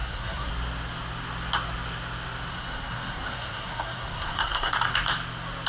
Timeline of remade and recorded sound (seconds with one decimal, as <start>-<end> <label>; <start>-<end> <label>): 0.0-0.5 remade; 0.5-2.5 recorded; 2.5-4.7 remade; 4.7-5.7 recorded